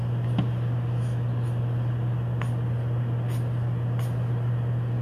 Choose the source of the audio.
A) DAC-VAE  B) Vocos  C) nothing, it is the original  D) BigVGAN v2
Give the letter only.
C